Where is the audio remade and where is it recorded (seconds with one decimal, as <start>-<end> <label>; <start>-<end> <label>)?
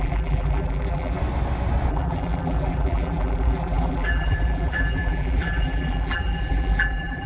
0.0-1.2 remade; 1.2-1.9 recorded; 1.9-7.3 remade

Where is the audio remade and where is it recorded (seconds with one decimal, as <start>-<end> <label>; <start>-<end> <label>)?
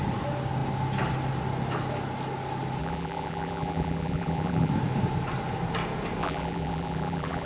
0.0-2.8 recorded; 2.8-4.7 remade; 4.7-6.2 recorded; 6.2-7.5 remade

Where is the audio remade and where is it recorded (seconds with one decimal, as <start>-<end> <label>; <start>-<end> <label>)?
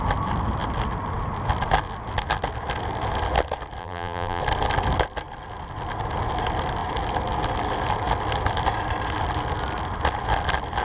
0.0-3.8 recorded; 3.8-4.4 remade; 4.4-10.8 recorded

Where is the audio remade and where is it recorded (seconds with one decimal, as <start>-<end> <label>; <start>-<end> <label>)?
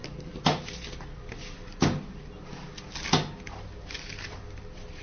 0.0-5.0 recorded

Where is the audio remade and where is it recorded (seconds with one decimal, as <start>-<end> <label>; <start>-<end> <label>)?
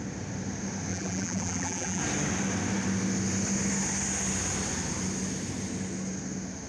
0.0-0.9 recorded; 0.9-2.0 remade; 2.0-6.7 recorded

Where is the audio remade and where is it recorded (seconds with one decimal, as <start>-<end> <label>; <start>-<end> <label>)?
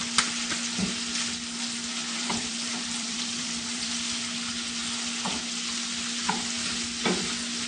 0.0-2.0 recorded; 2.0-3.9 remade; 3.9-7.7 recorded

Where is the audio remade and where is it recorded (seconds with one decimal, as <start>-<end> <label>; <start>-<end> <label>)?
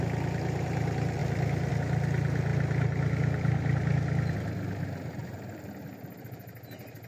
0.0-1.2 recorded; 1.2-1.7 remade; 1.7-5.2 recorded; 5.2-6.0 remade; 6.0-7.1 recorded